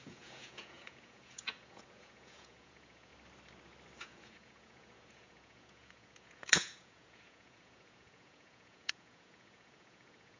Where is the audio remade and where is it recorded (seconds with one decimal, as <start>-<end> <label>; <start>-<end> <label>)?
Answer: 0.0-3.1 remade; 3.1-4.0 recorded; 4.0-10.4 remade